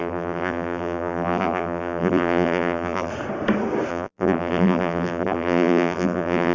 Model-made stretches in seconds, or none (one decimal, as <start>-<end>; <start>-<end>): 0.0-3.1; 3.9-6.5